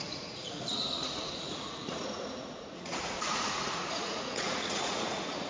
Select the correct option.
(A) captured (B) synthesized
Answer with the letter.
B